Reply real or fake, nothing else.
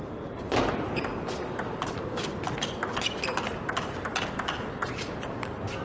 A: real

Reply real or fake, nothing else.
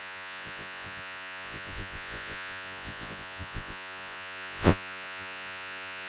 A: fake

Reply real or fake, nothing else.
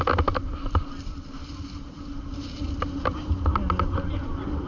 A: real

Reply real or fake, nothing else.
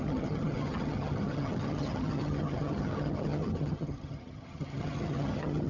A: fake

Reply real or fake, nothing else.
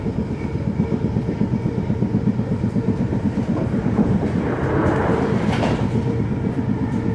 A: fake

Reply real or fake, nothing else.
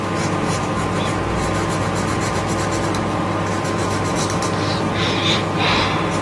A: real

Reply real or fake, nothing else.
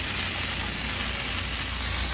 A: real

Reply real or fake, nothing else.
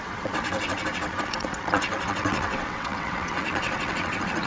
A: fake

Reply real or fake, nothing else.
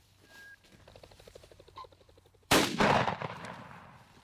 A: fake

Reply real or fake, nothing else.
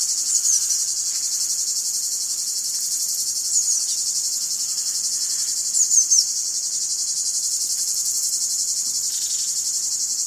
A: real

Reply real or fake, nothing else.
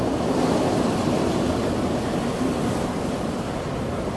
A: real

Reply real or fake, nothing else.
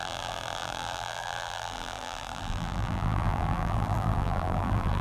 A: fake